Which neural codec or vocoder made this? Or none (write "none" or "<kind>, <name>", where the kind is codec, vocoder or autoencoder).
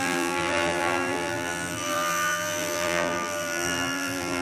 vocoder, BigVGAN v2